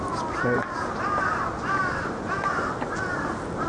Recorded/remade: recorded